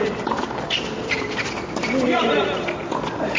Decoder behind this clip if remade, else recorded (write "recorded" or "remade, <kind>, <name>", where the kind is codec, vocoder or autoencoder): recorded